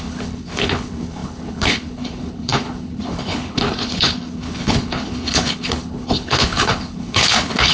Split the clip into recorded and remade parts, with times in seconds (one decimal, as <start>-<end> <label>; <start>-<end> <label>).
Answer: 0.0-7.7 remade